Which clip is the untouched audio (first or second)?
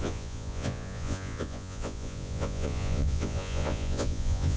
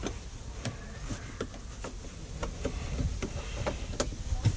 second